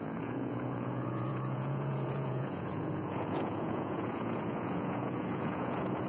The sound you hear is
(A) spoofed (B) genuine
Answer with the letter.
A